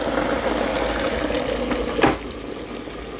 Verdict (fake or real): real